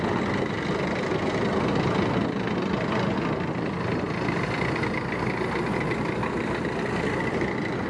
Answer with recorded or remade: recorded